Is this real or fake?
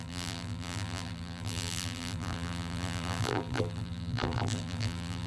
fake